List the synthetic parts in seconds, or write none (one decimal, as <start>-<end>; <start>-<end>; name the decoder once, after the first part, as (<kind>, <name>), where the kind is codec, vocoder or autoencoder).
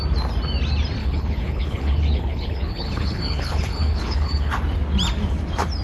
1.0-4.5 (codec, HILCodec)